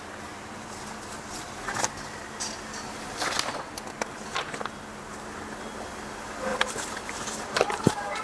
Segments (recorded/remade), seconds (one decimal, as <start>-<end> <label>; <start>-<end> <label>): 0.0-6.5 recorded; 6.5-8.2 remade

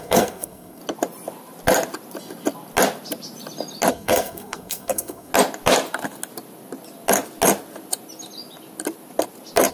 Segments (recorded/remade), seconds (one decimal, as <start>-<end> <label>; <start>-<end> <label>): 0.0-0.8 remade; 0.8-3.9 recorded; 3.9-5.3 remade; 5.3-9.7 recorded

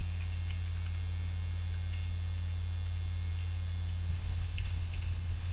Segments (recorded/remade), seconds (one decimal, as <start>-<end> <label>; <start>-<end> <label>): 0.0-4.1 recorded; 4.1-5.5 remade